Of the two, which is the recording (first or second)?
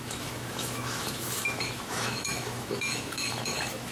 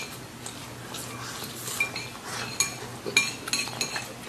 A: second